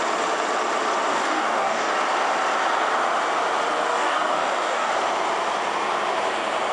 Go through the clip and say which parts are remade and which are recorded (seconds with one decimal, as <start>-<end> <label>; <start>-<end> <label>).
0.0-1.1 recorded; 1.1-1.9 remade; 1.9-3.9 recorded; 3.9-4.9 remade; 4.9-6.7 recorded